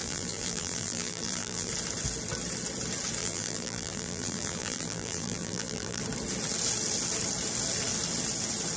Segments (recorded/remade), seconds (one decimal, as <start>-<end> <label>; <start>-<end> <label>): 0.0-1.7 remade; 1.7-3.2 recorded; 3.2-6.0 remade; 6.0-8.8 recorded